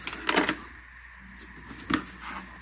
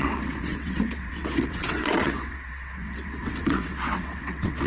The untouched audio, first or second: first